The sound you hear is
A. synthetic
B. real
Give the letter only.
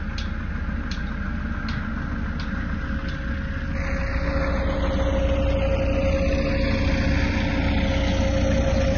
B